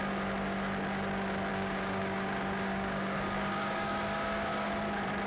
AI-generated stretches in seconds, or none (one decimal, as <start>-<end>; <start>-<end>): 1.5-4.7